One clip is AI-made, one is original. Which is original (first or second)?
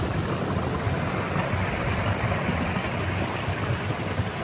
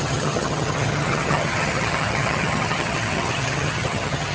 first